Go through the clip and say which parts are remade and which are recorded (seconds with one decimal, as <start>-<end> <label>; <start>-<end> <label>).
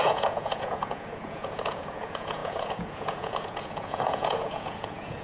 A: 0.0-5.2 remade